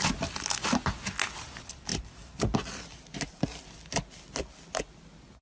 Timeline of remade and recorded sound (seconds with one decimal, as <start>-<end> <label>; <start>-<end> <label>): 0.0-1.9 recorded; 1.9-2.4 remade; 2.4-5.4 recorded